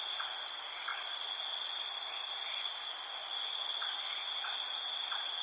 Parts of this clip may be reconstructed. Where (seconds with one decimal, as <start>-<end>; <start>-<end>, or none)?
none